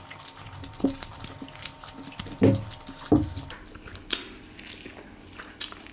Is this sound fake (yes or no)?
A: no